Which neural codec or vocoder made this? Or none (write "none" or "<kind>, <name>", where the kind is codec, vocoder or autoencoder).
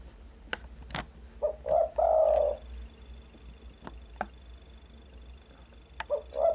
none